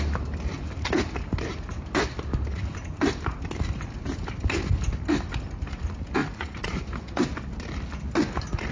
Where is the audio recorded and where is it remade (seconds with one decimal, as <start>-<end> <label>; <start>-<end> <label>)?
0.0-6.2 recorded; 6.2-6.8 remade; 6.8-8.7 recorded